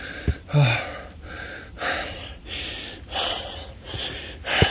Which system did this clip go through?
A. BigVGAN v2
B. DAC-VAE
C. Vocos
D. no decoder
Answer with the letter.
D